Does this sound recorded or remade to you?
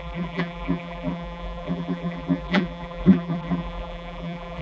remade